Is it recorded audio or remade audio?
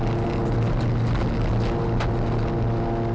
recorded